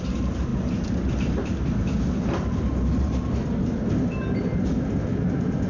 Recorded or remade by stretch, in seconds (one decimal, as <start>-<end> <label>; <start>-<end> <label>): 0.0-5.7 recorded